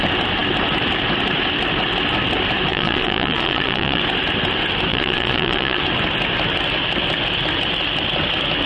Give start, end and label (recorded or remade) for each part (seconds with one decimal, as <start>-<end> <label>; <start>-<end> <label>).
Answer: 0.0-2.7 recorded; 2.7-4.0 remade; 4.0-4.9 recorded; 4.9-5.8 remade; 5.8-8.7 recorded